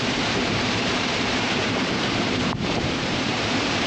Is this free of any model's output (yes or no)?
no